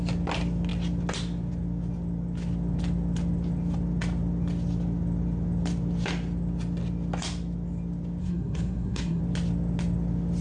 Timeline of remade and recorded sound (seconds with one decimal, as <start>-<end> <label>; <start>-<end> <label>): 0.0-8.2 recorded; 8.2-9.2 remade; 9.2-10.4 recorded